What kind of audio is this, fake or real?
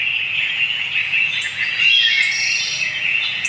fake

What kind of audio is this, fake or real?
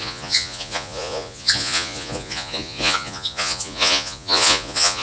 fake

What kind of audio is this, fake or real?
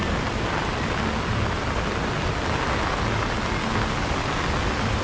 real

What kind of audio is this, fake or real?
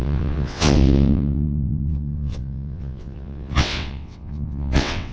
fake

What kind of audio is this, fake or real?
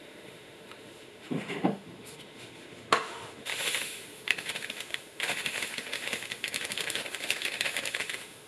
fake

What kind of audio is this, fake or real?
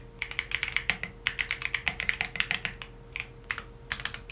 real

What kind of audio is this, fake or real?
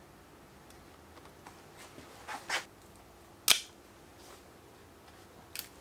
real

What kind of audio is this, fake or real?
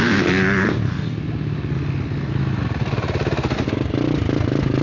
real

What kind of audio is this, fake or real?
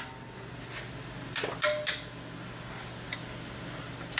real